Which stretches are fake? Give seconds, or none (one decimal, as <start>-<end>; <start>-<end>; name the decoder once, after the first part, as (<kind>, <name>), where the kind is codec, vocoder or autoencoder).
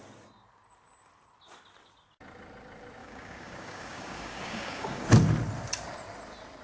3.0-5.1 (codec, DAC)